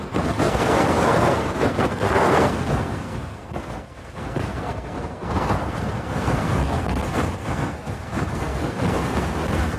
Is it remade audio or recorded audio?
remade